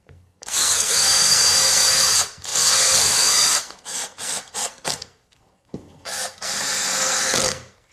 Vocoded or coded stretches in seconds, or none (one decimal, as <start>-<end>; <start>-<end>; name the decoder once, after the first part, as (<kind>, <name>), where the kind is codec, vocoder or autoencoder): 0.0-7.9 (codec, SNAC)